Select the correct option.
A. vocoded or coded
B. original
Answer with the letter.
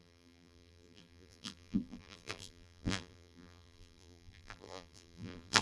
A